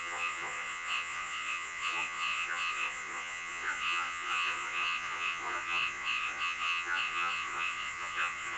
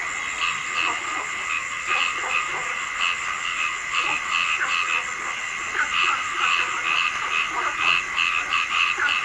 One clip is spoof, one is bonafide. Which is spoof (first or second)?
first